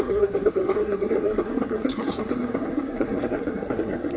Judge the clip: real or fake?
fake